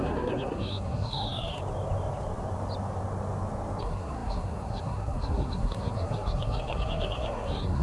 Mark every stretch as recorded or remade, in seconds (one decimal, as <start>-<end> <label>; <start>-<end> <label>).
0.0-1.6 remade; 1.6-3.8 recorded; 3.8-7.8 remade